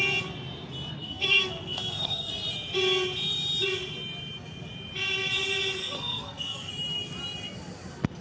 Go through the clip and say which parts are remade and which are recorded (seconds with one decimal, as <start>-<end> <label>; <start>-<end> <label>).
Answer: 0.0-1.0 recorded; 1.0-2.3 remade; 2.3-5.8 recorded; 5.8-6.7 remade; 6.7-8.2 recorded